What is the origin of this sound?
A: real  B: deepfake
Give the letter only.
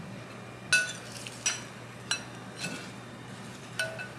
A